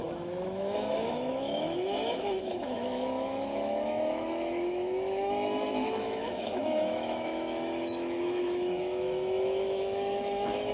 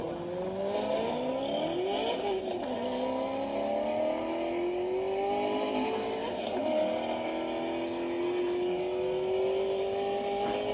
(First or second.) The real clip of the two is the second